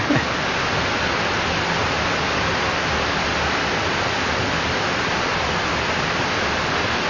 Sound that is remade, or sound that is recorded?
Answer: recorded